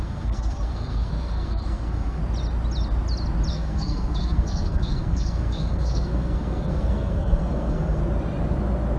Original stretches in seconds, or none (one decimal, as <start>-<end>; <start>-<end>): 2.2-3.5; 8.0-9.0